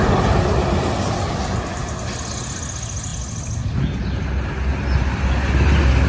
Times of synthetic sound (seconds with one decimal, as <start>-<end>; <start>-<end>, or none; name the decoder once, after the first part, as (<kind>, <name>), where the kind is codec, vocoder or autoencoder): none

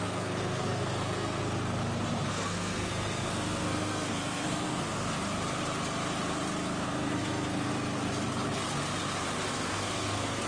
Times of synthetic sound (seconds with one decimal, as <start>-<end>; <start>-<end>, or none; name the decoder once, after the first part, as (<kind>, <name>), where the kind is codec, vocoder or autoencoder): 0.0-1.4 (codec, SNAC); 2.3-5.0; 6.8-7.7; 9.5-10.5